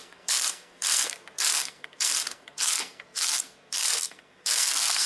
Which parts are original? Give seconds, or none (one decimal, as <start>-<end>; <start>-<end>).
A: none

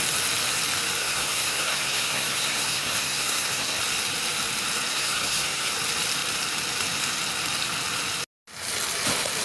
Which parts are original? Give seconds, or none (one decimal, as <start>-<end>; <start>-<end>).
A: 0.0-1.0; 3.8-4.9; 5.7-9.4

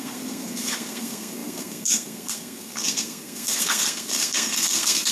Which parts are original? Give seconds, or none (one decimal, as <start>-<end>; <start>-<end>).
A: none